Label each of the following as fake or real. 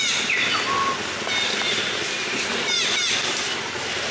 real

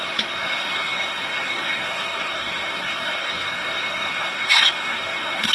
fake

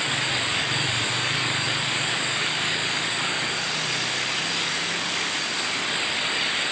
fake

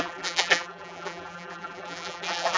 fake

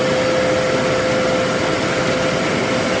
real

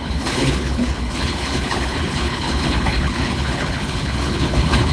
fake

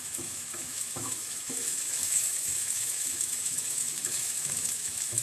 fake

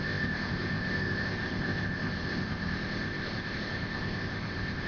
fake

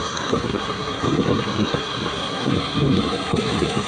fake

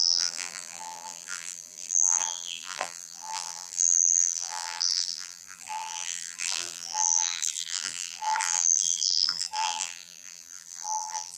fake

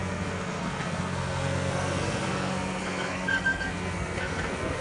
fake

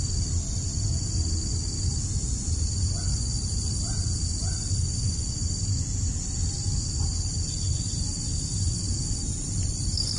real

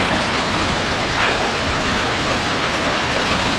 fake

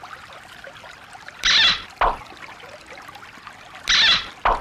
real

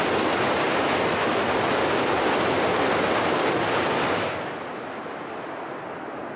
real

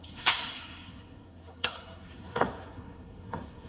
fake